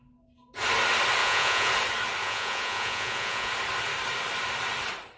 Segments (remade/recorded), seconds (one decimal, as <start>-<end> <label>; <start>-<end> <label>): 0.0-1.2 recorded; 1.2-1.7 remade; 1.7-2.2 recorded; 2.2-3.5 remade; 3.5-5.2 recorded

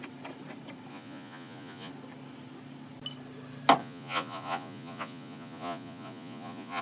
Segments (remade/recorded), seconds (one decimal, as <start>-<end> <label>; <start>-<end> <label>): 0.0-0.9 recorded; 0.9-1.9 remade; 1.9-3.8 recorded; 3.8-6.8 remade

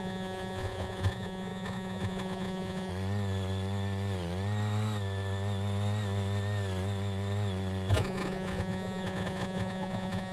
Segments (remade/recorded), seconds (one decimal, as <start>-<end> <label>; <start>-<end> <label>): 0.0-2.9 remade; 2.9-7.9 recorded; 7.9-10.3 remade

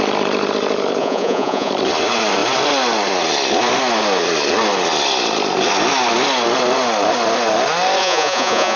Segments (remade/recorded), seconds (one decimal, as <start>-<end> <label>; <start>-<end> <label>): 0.0-1.0 recorded; 1.0-1.7 remade; 1.7-8.0 recorded; 8.0-8.8 remade

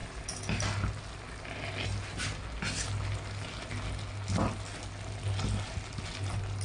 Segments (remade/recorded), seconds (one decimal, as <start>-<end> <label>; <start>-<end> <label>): 0.0-6.6 recorded

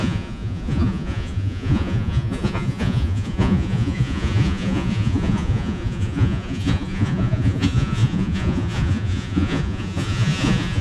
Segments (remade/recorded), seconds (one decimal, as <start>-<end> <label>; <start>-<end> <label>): 0.0-10.8 remade

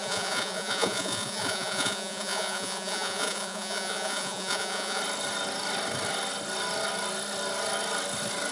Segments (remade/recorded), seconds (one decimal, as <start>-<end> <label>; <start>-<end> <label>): 0.0-5.0 remade; 5.0-8.5 recorded